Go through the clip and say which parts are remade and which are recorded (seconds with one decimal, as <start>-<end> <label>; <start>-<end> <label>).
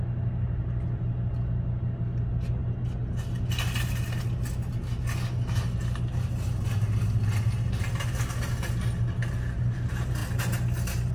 0.0-11.1 recorded